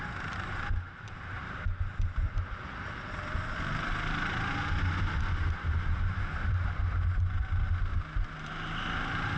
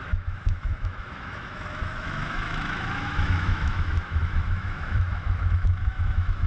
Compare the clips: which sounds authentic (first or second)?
first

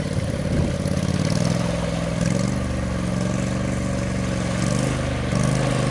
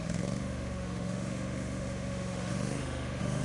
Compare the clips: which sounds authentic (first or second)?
first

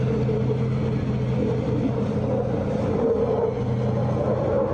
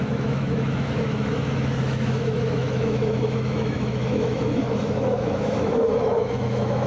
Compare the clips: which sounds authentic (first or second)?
first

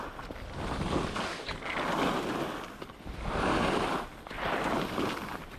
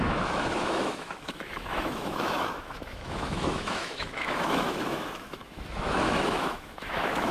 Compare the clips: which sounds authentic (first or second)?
first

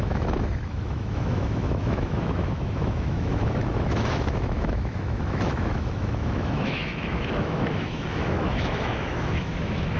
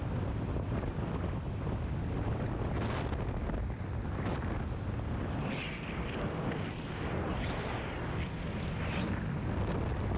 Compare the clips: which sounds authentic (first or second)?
second